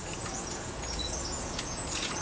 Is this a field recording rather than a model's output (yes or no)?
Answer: no